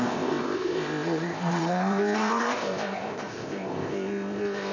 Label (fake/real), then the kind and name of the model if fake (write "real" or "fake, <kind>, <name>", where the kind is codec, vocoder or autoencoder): fake, codec, ZipCodec